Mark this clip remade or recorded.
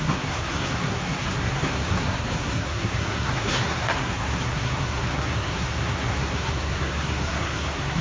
remade